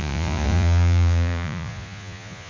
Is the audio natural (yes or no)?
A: no